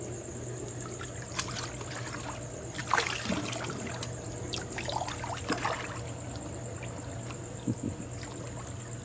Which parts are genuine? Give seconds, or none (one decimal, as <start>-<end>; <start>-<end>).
0.0-9.0